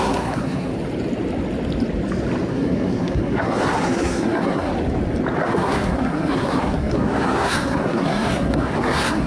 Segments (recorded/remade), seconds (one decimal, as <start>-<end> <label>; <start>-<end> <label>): 0.0-0.7 remade; 0.7-2.5 recorded; 2.5-4.7 remade; 4.7-5.4 recorded; 5.4-9.3 remade